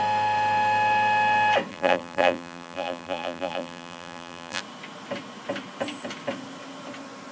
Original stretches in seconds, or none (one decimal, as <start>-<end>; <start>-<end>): 0.0-1.7; 4.6-7.3